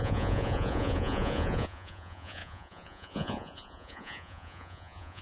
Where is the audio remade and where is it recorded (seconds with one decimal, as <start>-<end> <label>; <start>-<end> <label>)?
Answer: 0.0-5.2 remade